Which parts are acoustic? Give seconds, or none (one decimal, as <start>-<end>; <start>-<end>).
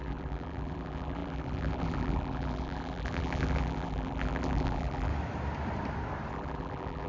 5.1-6.3